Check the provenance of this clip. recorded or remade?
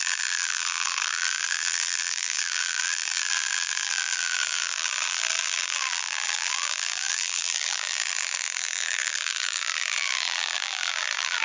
remade